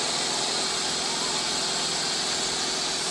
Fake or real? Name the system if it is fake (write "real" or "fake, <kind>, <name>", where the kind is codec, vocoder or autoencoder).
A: real